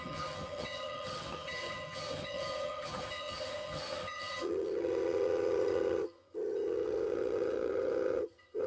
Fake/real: fake